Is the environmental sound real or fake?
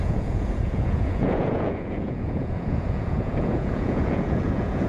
fake